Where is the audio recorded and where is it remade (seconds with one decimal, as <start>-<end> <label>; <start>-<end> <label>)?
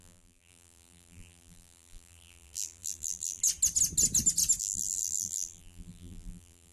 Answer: 0.0-3.4 remade; 3.4-4.6 recorded; 4.6-6.7 remade